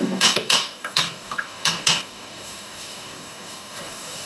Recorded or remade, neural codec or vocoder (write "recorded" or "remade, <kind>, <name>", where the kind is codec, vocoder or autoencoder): remade, codec, DAC